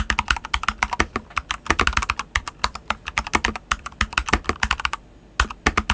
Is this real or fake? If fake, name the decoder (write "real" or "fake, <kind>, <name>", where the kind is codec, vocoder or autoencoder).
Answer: real